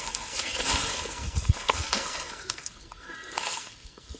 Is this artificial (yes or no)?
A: yes